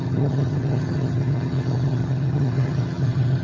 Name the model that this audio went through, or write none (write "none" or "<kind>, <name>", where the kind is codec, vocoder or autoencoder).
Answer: vocoder, HiFi-GAN